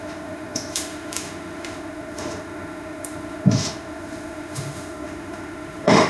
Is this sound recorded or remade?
remade